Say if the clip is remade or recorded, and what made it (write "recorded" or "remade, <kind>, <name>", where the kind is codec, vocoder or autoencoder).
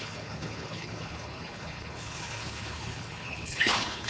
remade, codec, HILCodec